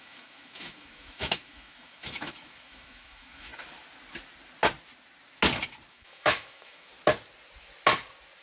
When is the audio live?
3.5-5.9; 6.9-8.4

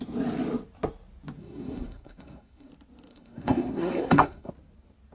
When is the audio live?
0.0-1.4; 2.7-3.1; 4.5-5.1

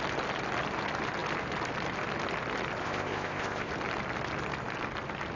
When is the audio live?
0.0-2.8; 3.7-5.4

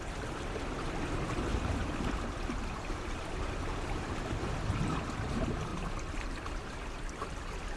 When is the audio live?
0.0-1.5; 4.5-5.7

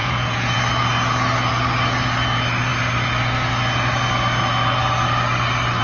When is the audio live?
0.6-5.8

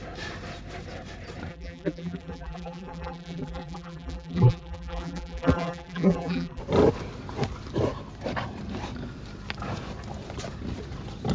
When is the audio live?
0.0-1.5; 6.6-11.3

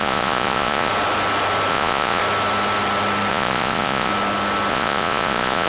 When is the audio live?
0.9-1.7; 2.2-3.3; 4.1-4.7